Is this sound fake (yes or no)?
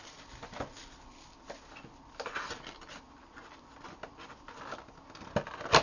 no